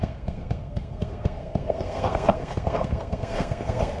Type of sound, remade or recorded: remade